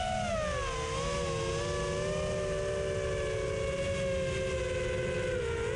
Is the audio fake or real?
real